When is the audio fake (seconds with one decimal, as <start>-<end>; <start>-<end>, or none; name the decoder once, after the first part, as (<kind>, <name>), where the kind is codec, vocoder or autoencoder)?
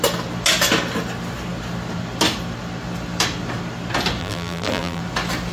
4.2-5.0 (vocoder, BigVGAN v2)